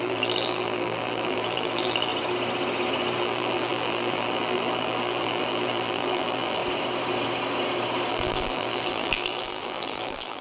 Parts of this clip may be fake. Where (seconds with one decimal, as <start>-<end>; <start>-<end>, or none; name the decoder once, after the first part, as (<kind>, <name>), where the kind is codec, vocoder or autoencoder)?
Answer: 0.0-2.1 (vocoder, BigVGAN v2); 3.2-6.6; 8.1-10.4